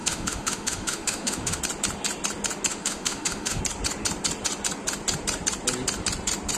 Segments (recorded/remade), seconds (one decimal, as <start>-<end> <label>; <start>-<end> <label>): 0.0-1.6 remade; 1.6-2.7 recorded; 2.7-3.6 remade; 3.6-6.6 recorded